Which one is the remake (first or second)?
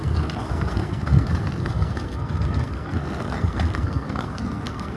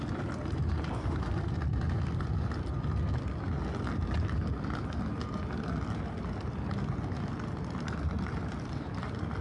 first